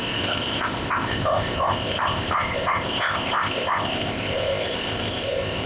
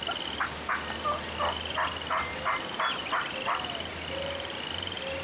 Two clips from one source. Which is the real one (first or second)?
second